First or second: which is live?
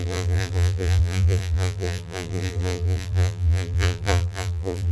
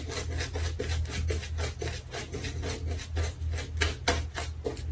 second